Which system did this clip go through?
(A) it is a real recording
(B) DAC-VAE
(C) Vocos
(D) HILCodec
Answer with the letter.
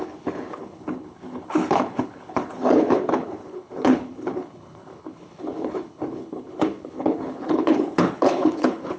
D